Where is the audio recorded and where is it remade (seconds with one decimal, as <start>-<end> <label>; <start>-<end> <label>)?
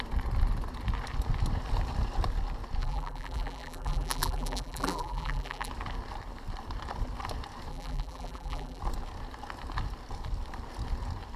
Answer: 0.0-2.8 recorded; 2.8-5.7 remade; 5.7-7.7 recorded; 7.7-8.8 remade; 8.8-11.4 recorded